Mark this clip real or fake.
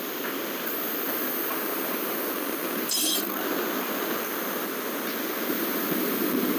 real